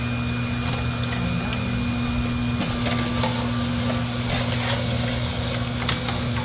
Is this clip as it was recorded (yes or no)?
yes